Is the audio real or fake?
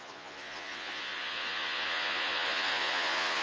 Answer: fake